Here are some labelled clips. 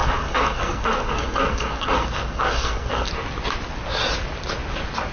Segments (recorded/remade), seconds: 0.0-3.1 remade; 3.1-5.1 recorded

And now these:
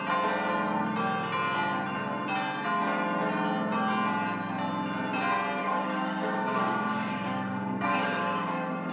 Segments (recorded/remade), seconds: 0.0-5.6 recorded; 5.6-8.9 remade

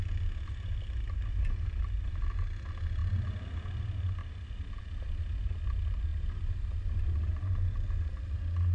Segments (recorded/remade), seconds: 0.0-8.7 recorded

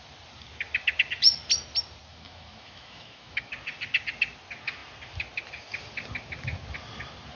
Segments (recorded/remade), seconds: 0.0-2.1 recorded; 2.1-3.5 remade; 3.5-7.3 recorded